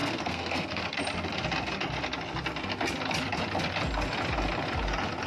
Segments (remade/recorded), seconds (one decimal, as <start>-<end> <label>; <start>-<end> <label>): 0.0-0.8 remade; 0.8-5.3 recorded